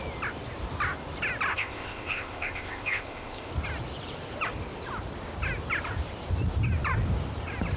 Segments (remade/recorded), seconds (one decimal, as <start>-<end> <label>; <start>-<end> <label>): 0.0-1.5 recorded; 1.5-3.5 remade; 3.5-7.8 recorded